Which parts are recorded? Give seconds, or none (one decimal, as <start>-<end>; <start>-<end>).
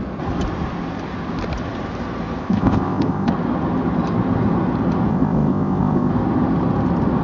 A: 0.0-2.4; 3.3-5.1; 6.1-7.2